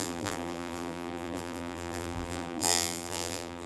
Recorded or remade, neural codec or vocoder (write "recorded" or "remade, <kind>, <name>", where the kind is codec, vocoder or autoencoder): remade, vocoder, BigVGAN v2